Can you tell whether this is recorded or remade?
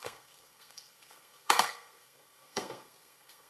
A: remade